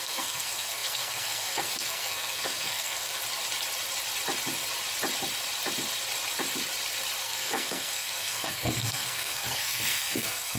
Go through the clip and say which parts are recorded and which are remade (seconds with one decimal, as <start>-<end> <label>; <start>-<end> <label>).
0.0-3.2 remade; 3.2-7.2 recorded; 7.2-10.6 remade